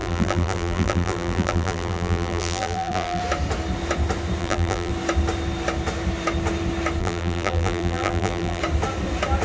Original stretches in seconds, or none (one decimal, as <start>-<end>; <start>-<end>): 3.2-4.4; 4.9-7.0; 8.6-9.4